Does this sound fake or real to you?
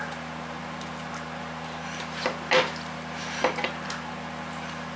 real